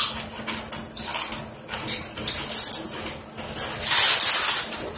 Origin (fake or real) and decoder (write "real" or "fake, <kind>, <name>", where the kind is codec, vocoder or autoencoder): real